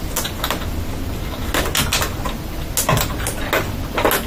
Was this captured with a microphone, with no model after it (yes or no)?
yes